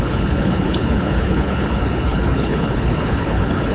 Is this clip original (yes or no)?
no